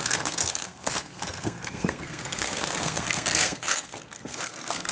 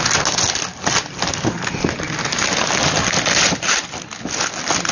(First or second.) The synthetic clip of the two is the first